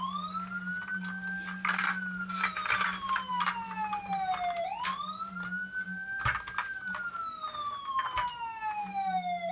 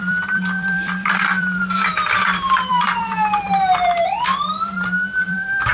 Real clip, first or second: first